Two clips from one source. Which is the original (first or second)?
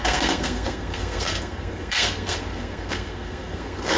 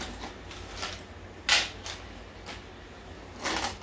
second